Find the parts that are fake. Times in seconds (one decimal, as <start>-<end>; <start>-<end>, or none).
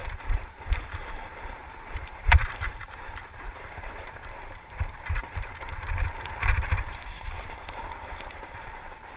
0.0-9.2